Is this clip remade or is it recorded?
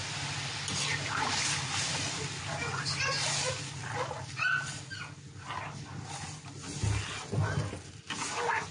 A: recorded